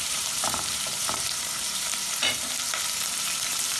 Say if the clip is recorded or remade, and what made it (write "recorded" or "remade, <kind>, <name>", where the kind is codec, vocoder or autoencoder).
remade, vocoder, BigVGAN v2